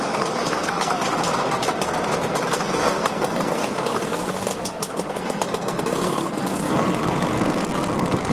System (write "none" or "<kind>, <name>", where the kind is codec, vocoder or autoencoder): codec, SNAC